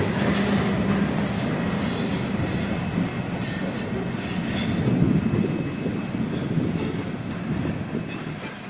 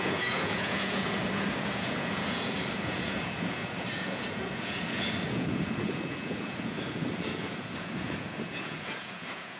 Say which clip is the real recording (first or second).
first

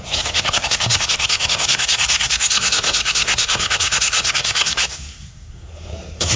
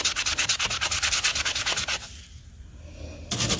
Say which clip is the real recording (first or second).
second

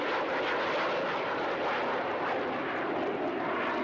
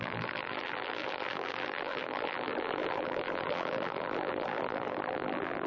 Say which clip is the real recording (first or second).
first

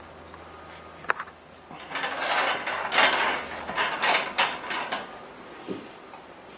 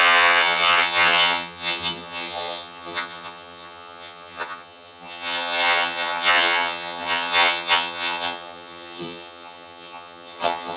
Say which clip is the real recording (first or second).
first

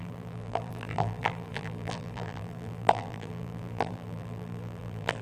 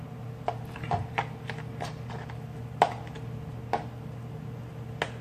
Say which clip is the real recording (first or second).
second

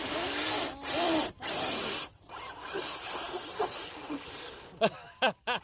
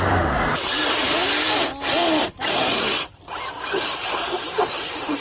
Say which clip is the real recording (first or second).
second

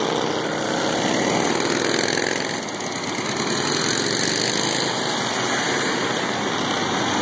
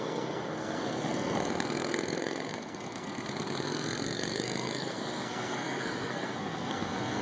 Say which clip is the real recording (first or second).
first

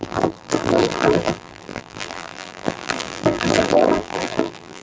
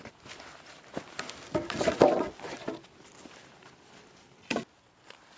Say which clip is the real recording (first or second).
second